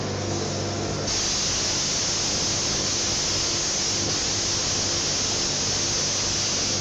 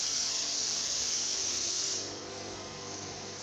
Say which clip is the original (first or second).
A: first